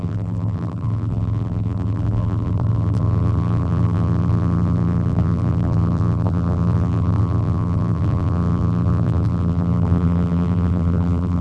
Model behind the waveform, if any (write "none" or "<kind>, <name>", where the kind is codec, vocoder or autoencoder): vocoder, BigVGAN v2